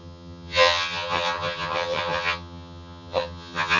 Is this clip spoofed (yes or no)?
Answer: yes